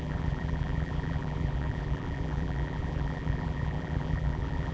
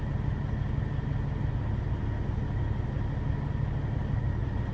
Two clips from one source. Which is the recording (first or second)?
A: second